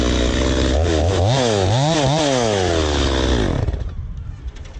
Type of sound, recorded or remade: recorded